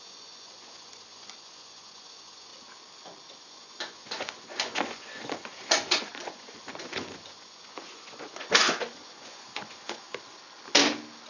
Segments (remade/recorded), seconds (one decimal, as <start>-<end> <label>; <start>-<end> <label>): 0.0-2.5 remade; 2.5-3.4 recorded; 3.4-10.1 remade; 10.1-11.3 recorded